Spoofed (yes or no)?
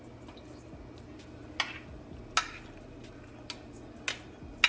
no